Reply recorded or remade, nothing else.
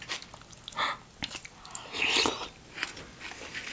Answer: recorded